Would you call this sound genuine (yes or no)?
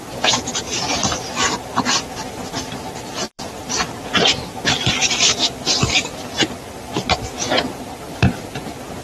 no